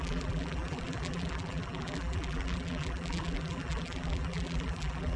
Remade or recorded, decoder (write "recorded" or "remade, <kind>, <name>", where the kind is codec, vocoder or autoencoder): remade, vocoder, BigVGAN v2